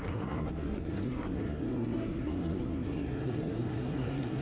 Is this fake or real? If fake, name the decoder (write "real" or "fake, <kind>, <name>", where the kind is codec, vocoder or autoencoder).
fake, codec, SNAC